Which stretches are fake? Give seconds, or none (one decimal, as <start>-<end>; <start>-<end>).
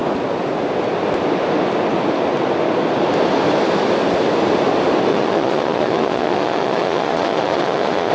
5.1-8.1